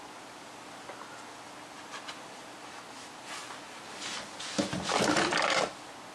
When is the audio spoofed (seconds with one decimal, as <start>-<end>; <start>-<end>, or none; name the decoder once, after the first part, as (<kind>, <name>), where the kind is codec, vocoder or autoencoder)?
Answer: none

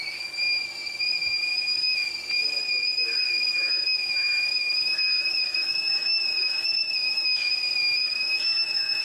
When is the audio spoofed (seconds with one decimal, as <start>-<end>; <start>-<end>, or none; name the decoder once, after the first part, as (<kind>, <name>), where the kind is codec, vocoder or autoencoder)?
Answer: 1.5-2.1 (autoencoder, DAC-VAE); 3.5-7.5; 8.0-9.0